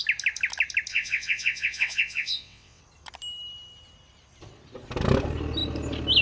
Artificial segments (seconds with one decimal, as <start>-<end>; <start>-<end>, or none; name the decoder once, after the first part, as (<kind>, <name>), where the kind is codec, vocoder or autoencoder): 0.9-2.8 (vocoder, WaveNeXt)